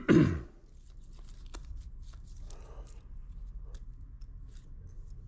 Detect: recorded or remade recorded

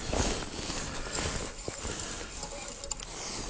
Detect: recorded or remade recorded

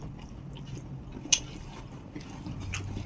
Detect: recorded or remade recorded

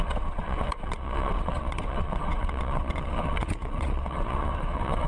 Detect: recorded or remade remade